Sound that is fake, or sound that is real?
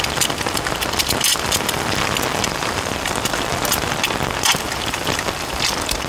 fake